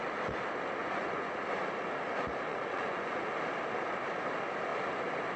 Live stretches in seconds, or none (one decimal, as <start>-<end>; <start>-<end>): 0.0-0.8; 1.4-2.5; 3.2-5.4